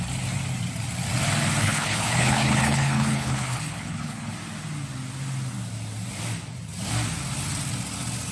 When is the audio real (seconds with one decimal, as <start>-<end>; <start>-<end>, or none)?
0.0-1.6; 4.3-8.3